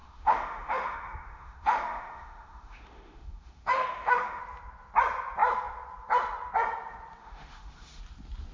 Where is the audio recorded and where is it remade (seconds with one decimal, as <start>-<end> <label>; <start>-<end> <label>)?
0.0-4.4 remade; 4.4-7.2 recorded; 7.2-8.0 remade; 8.0-8.5 recorded

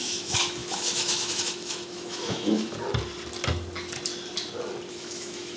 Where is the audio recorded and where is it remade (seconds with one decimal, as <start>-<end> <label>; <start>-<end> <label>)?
0.0-2.7 remade; 2.7-4.9 recorded; 4.9-5.6 remade

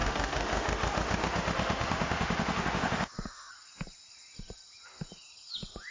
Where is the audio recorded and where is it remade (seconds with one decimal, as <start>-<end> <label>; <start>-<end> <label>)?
0.0-3.5 remade; 3.5-5.9 recorded

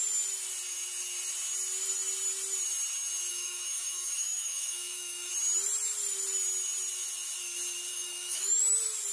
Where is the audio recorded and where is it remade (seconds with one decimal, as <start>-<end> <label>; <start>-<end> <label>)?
0.0-3.3 recorded; 3.3-5.3 remade; 5.3-7.9 recorded; 7.9-8.6 remade; 8.6-9.1 recorded

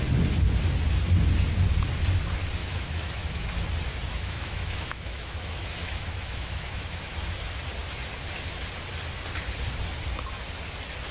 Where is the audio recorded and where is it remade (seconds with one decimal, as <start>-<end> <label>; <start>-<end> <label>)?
0.0-2.6 recorded; 2.6-3.5 remade; 3.5-4.1 recorded; 4.1-7.1 remade; 7.1-11.1 recorded